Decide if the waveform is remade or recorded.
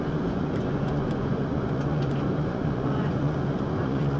remade